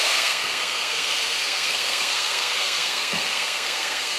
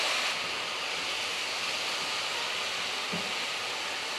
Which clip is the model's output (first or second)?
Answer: first